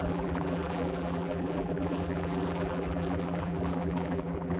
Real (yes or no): no